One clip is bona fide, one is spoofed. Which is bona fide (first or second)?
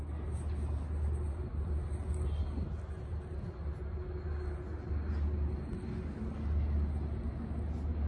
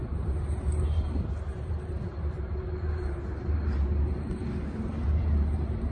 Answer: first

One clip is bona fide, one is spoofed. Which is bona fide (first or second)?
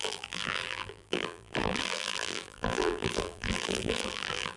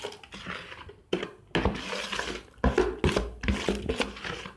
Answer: second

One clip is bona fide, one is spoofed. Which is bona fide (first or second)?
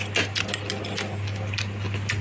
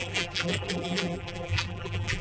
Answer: first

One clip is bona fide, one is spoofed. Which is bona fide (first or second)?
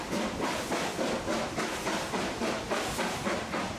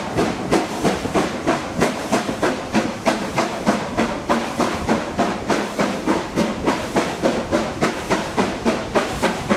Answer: first